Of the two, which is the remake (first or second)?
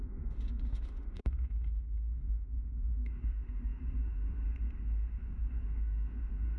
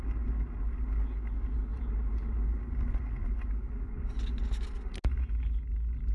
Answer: first